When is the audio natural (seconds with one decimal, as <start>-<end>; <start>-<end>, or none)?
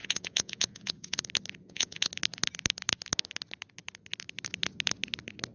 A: 1.2-1.6; 2.1-5.5